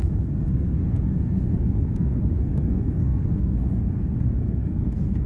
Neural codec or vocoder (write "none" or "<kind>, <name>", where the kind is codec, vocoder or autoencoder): codec, SNAC